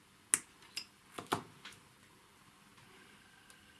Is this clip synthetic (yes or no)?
no